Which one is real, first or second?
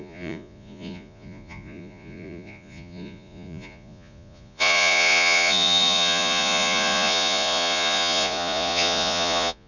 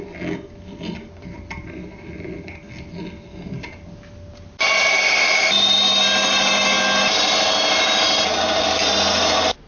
second